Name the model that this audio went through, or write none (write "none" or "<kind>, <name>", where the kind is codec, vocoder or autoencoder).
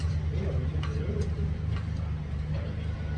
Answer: none